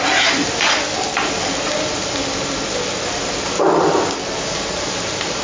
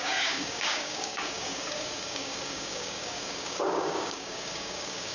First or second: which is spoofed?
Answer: second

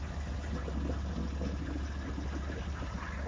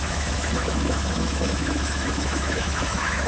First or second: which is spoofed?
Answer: second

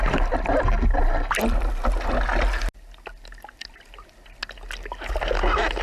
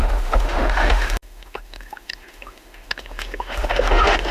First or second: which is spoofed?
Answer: second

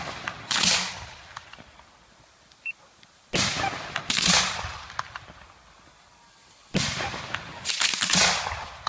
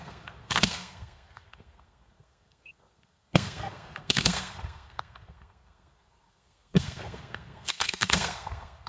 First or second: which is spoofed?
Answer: second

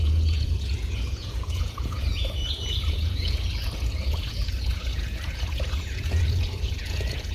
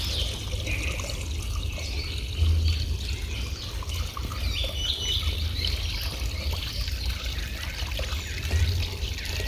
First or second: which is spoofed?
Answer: first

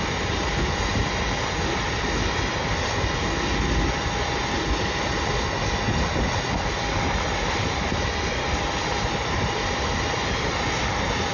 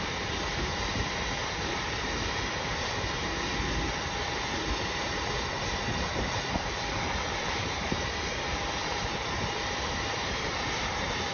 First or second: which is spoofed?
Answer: second